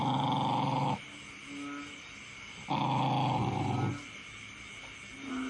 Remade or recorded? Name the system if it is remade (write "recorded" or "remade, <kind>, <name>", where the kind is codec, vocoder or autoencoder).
recorded